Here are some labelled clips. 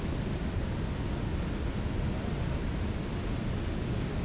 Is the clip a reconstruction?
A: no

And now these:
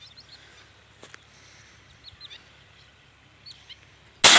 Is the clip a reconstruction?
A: no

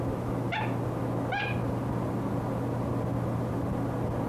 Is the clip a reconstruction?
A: no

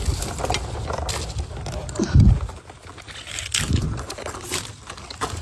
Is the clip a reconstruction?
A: no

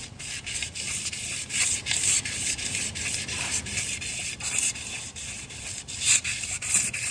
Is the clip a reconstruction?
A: yes